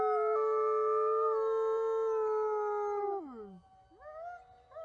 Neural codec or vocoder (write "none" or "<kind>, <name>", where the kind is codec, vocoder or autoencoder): none